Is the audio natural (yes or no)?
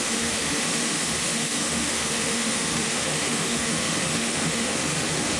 no